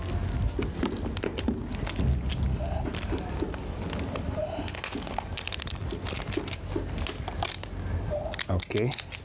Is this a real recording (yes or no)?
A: yes